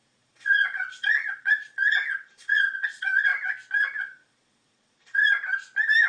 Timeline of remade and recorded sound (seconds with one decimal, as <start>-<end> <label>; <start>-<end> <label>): 0.0-3.3 remade; 3.3-4.0 recorded; 4.0-5.2 remade; 5.2-6.1 recorded